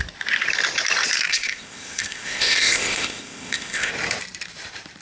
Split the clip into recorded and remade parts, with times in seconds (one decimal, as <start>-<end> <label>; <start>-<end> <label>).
0.0-1.3 recorded; 1.3-3.9 remade; 3.9-5.0 recorded

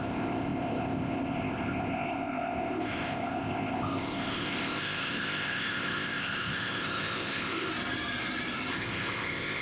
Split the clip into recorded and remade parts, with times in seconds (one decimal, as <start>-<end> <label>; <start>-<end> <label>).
0.0-7.7 remade; 7.7-8.7 recorded; 8.7-9.6 remade